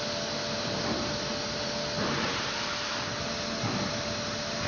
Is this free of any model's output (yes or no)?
yes